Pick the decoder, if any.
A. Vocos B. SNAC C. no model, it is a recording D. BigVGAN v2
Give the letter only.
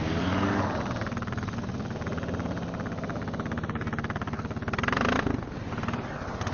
C